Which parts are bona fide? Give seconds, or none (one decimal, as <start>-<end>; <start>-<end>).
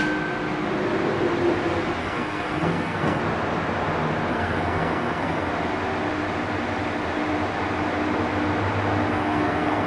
0.0-2.0; 3.2-4.3; 5.5-9.1